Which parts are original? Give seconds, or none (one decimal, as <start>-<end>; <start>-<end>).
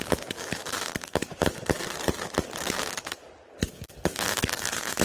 1.8-2.6; 3.2-3.7